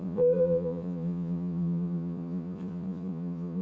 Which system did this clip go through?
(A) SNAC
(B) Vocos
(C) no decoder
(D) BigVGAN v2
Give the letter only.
B